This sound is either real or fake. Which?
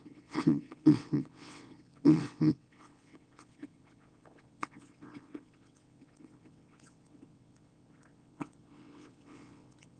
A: fake